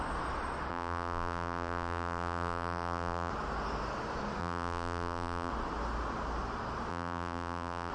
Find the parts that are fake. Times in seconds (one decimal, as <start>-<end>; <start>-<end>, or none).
0.7-3.3; 4.4-5.5; 6.9-7.9